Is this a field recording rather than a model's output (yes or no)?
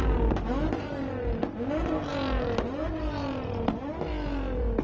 yes